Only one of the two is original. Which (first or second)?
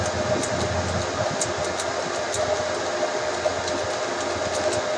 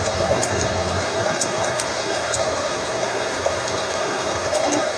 first